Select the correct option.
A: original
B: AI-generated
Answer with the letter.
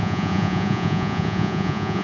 B